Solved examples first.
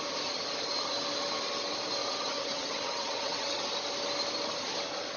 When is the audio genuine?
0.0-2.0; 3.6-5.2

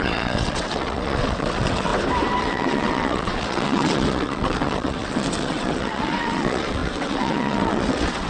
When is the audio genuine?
1.9-2.4

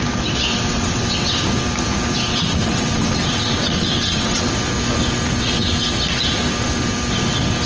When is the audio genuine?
0.0-0.5; 1.4-2.3; 4.5-7.7

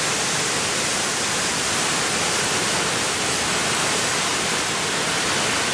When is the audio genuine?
0.0-5.7

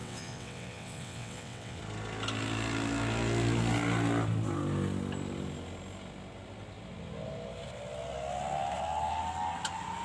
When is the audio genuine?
1.8-10.0

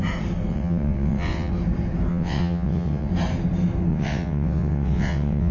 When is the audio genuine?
0.0-0.5; 1.5-2.1; 3.1-3.9